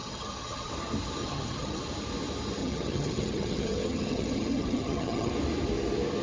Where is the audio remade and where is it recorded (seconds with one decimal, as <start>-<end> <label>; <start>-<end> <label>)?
0.0-0.7 remade; 0.7-1.2 recorded; 1.2-1.8 remade; 1.8-2.6 recorded; 2.6-5.3 remade; 5.3-6.2 recorded